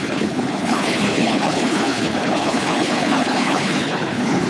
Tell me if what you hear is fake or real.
fake